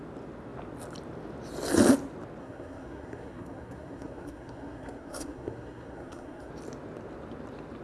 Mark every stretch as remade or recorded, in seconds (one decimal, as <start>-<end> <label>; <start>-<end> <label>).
0.0-2.4 recorded; 2.4-6.5 remade; 6.5-7.8 recorded